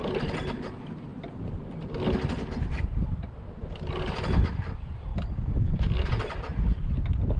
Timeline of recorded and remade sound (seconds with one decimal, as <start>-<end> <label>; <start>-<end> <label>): 0.0-5.1 recorded; 5.1-6.1 remade; 6.1-7.4 recorded